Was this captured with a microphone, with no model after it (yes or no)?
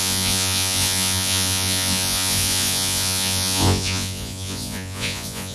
no